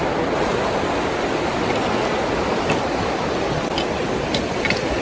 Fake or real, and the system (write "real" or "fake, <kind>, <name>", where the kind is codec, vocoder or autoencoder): real